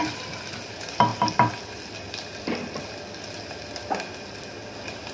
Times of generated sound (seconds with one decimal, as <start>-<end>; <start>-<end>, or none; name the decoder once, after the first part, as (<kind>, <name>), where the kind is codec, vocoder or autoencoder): none